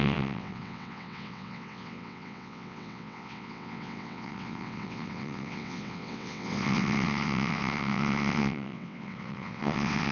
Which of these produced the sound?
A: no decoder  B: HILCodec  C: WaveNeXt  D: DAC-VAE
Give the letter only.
C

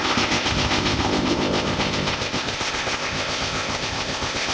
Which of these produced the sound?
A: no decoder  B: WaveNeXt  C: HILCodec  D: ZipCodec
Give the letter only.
D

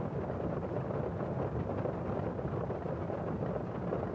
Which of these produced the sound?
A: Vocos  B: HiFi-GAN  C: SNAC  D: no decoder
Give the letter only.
D